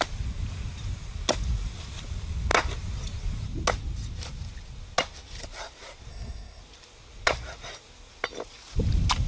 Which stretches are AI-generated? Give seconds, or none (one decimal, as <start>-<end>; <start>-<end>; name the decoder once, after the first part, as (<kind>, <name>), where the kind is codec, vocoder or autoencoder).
6.1-6.6 (codec, SNAC)